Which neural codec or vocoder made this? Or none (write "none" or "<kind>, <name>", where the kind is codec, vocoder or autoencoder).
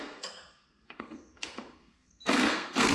codec, SNAC